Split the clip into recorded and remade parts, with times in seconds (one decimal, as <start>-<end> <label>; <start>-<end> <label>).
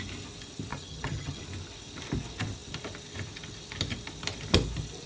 0.0-0.7 recorded; 0.7-1.4 remade; 1.4-5.1 recorded